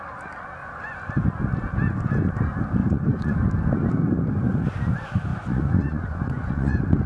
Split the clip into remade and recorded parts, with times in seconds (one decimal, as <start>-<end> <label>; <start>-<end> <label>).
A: 0.0-0.6 recorded; 0.6-1.1 remade; 1.1-2.8 recorded; 2.8-3.4 remade; 3.4-5.3 recorded; 5.3-7.1 remade